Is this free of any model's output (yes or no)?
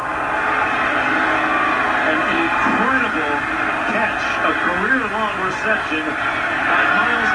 yes